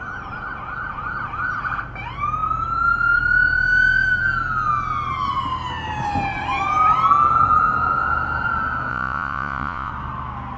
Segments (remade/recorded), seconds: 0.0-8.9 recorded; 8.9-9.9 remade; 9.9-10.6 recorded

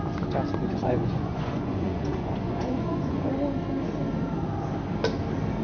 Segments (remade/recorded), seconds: 0.0-0.6 recorded; 0.6-3.3 remade; 3.3-5.6 recorded

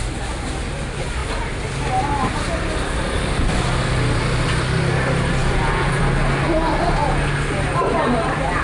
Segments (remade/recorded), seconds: 0.0-5.4 recorded; 5.4-6.0 remade; 6.0-8.6 recorded

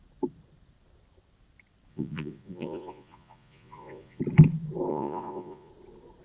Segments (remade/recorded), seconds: 0.0-1.9 recorded; 1.9-4.2 remade; 4.2-4.9 recorded; 4.9-5.7 remade; 5.7-6.2 recorded

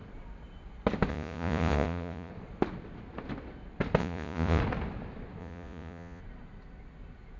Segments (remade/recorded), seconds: 0.0-1.1 recorded; 1.1-2.3 remade; 2.3-4.0 recorded; 4.0-4.6 remade; 4.6-5.4 recorded; 5.4-6.2 remade; 6.2-7.4 recorded

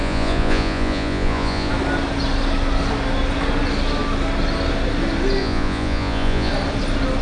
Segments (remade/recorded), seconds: 0.0-1.7 remade; 1.7-5.4 recorded; 5.4-6.5 remade; 6.5-7.2 recorded

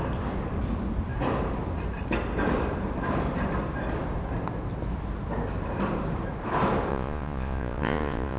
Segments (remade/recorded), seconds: 0.0-6.9 recorded; 6.9-8.4 remade

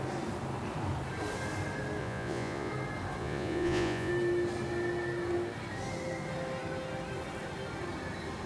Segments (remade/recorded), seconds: 0.0-2.0 recorded; 2.0-2.7 remade; 2.7-3.2 recorded; 3.2-4.1 remade; 4.1-8.5 recorded